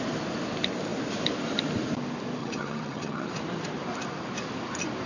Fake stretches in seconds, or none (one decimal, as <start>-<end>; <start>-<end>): 2.4-3.3